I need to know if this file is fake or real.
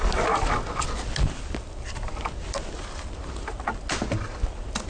real